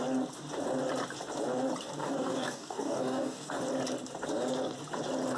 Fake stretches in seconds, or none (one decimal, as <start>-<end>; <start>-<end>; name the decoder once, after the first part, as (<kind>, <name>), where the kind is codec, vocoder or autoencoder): 2.0-3.6 (codec, DAC)